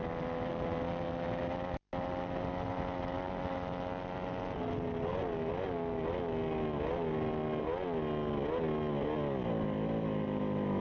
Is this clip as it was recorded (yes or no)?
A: yes